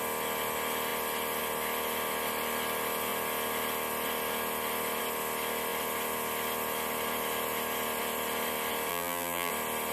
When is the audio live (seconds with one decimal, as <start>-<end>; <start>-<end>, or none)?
0.0-8.9; 9.5-9.9